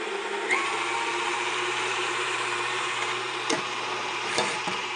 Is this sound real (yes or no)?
no